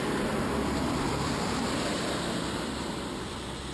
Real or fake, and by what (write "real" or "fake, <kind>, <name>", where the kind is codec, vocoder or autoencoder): fake, vocoder, BigVGAN v2